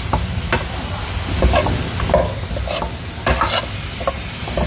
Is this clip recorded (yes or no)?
yes